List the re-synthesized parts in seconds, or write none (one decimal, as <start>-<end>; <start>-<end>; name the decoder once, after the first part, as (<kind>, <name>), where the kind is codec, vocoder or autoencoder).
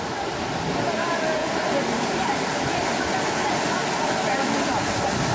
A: none